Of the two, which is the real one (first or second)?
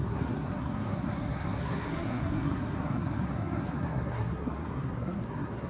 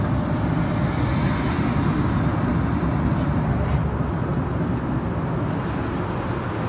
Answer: second